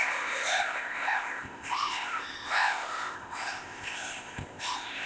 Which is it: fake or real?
fake